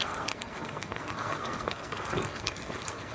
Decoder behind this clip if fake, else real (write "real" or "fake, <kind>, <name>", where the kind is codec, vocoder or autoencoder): fake, codec, SNAC